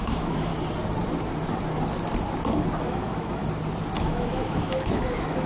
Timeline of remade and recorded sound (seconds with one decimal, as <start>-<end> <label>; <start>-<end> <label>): 0.0-0.5 remade; 0.5-2.8 recorded; 2.8-3.4 remade; 3.4-4.0 recorded; 4.0-5.5 remade